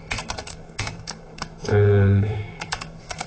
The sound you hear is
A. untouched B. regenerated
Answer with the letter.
B